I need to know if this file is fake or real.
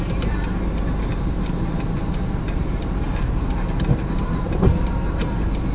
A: fake